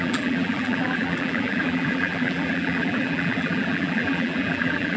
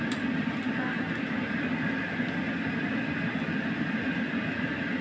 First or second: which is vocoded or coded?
first